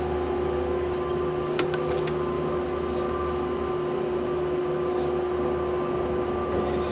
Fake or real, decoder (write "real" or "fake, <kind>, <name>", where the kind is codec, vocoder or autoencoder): real